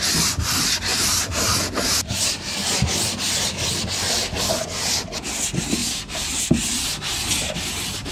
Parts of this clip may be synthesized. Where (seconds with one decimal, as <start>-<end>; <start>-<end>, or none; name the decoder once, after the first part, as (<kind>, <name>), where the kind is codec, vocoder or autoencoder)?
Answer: none